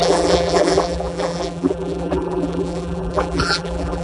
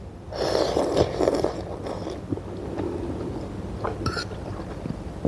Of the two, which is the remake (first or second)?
first